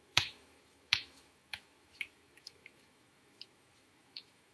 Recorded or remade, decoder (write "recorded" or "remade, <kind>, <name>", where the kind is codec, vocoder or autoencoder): remade, autoencoder, DAC-VAE